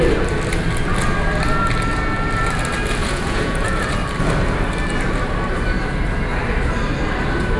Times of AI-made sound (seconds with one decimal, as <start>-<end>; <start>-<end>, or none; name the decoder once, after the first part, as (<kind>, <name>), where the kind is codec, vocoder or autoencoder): 3.0-3.9 (vocoder, Vocos)